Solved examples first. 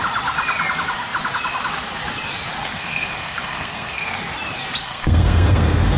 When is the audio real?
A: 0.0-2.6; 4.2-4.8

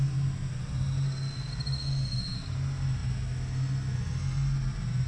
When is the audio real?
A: 0.0-5.1